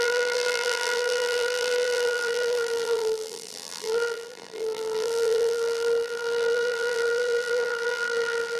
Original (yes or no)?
no